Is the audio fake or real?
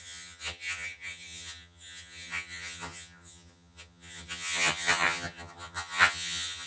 fake